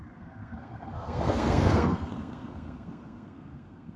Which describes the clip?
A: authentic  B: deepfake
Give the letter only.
B